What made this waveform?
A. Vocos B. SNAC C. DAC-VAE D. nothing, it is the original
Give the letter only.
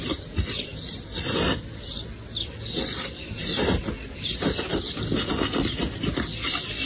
D